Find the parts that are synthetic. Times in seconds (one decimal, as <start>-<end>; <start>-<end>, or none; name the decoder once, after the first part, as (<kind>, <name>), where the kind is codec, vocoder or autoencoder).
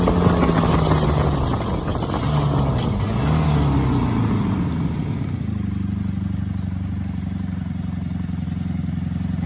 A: none